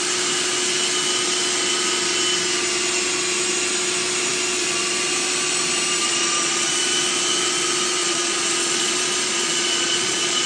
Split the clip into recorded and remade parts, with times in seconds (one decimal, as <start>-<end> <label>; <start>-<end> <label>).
0.0-6.0 recorded; 6.0-6.7 remade; 6.7-8.0 recorded; 8.0-8.9 remade; 8.9-9.3 recorded; 9.3-10.5 remade